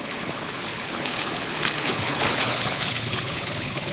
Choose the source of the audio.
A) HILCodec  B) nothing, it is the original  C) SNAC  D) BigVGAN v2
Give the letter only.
A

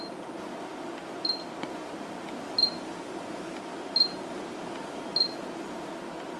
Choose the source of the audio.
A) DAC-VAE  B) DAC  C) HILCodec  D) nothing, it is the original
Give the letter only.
D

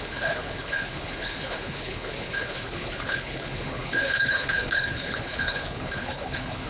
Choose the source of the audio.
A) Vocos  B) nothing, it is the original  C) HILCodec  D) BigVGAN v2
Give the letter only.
C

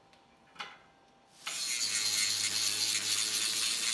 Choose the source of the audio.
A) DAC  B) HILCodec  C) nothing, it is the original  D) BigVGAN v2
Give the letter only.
C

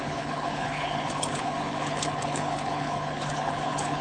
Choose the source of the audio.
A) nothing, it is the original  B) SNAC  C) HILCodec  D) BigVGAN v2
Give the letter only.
C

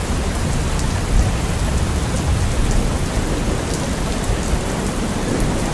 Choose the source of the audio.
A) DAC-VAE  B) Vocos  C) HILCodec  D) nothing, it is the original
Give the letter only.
D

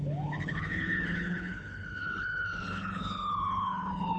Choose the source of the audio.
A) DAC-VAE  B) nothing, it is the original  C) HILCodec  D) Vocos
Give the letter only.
C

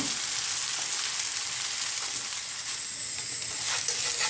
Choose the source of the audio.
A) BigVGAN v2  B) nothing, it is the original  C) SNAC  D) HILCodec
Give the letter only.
B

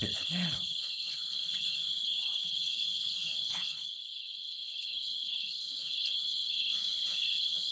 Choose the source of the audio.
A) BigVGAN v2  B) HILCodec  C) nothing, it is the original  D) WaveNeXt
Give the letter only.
B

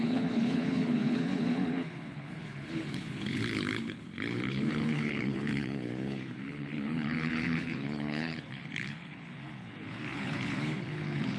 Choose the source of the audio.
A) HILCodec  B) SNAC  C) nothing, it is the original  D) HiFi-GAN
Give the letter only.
A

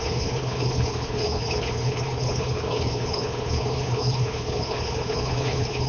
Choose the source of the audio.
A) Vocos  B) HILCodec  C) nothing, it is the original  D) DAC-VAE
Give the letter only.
B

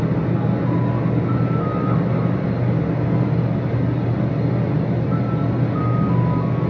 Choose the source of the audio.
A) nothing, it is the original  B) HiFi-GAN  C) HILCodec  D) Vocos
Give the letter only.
A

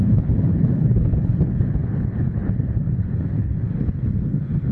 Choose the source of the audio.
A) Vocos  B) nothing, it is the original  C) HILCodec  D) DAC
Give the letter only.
C